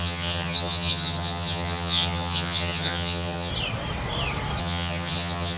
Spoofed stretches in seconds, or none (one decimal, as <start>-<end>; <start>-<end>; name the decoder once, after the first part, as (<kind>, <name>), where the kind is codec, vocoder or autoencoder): 0.0-3.5 (vocoder, HiFi-GAN); 4.6-5.6